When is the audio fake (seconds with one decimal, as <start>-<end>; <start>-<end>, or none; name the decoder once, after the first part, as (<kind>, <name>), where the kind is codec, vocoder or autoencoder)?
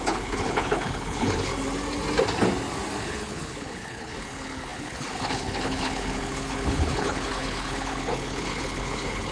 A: 0.0-1.5 (codec, HILCodec); 3.0-9.3